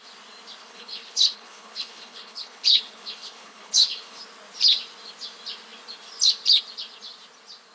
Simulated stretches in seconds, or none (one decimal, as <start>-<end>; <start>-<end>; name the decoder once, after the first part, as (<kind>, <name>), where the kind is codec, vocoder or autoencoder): 0.6-4.2 (codec, HILCodec)